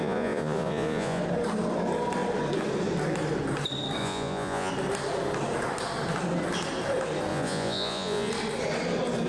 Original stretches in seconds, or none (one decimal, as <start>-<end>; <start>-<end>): 1.2-4.0; 4.7-7.3; 8.3-9.3